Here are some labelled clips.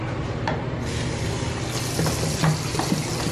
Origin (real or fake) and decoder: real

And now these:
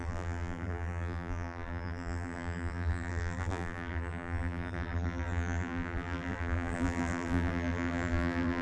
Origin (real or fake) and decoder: fake, vocoder, BigVGAN v2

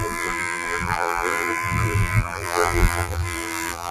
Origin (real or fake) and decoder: fake, vocoder, BigVGAN v2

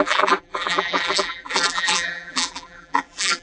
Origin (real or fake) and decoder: fake, vocoder, BigVGAN v2